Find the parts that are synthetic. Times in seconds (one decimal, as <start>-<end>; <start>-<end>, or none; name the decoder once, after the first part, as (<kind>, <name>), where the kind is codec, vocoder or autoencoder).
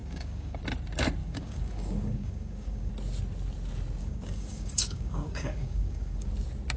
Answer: 0.0-0.6 (codec, DAC); 1.2-2.9; 4.0-6.3